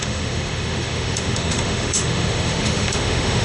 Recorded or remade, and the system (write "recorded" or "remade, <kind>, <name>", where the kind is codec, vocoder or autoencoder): remade, autoencoder, DAC-VAE